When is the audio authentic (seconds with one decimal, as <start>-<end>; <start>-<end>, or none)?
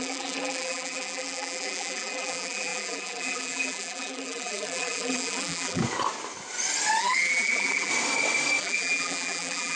5.8-7.0; 7.9-8.6